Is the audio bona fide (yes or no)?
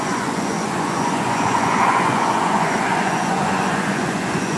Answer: no